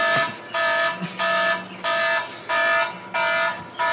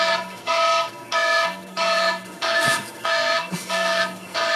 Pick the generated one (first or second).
second